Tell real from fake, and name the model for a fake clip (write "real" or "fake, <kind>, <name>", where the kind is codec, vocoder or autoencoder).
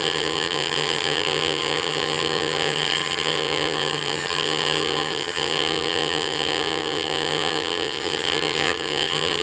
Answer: fake, vocoder, HiFi-GAN